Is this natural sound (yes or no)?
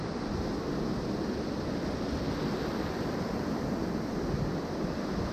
yes